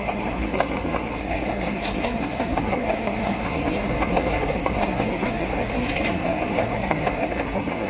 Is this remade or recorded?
remade